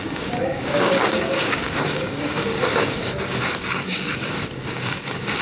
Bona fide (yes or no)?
no